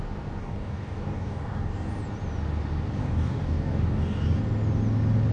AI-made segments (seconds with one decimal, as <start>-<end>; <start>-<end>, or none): 0.4-1.9; 3.0-4.4